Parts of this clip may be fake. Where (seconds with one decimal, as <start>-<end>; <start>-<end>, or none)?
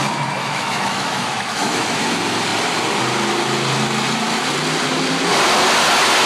0.4-2.0